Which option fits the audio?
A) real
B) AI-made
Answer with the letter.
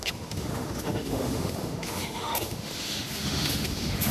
B